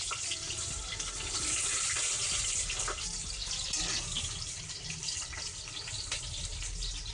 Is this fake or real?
real